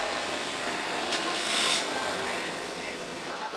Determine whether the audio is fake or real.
fake